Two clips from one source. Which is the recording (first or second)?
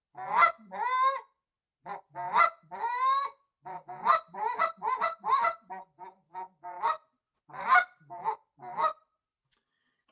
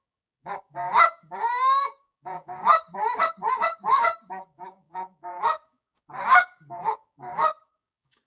first